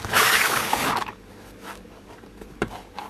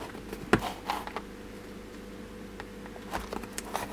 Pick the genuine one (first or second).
second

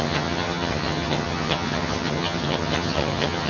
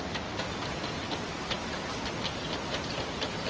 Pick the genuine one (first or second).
second